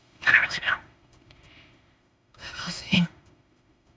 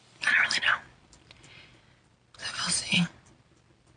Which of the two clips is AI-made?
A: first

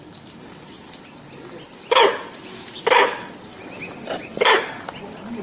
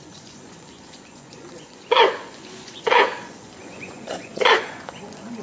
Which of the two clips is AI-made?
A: second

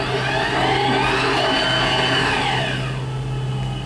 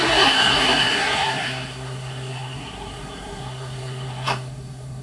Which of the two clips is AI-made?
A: second